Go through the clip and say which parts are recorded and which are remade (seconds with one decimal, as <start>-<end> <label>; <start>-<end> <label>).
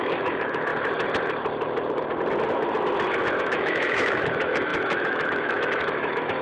0.0-0.7 remade; 0.7-3.4 recorded; 3.4-6.4 remade